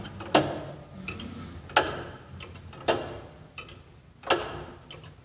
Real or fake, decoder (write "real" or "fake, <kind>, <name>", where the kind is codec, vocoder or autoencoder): real